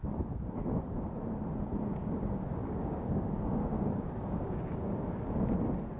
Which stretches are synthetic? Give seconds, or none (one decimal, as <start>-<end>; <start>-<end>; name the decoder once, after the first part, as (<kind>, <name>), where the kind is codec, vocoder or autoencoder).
1.9-5.5 (codec, DAC)